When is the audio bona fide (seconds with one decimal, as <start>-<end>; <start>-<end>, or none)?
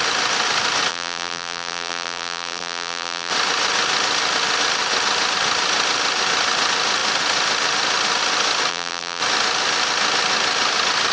0.0-0.9; 3.3-8.7; 9.2-11.1